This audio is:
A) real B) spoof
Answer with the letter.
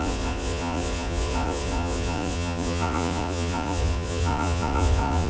B